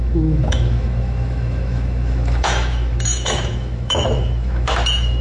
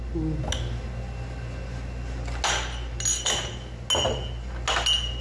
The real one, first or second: second